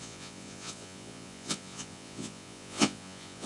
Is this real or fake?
fake